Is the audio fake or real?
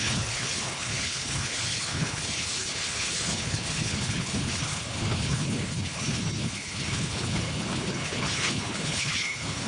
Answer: fake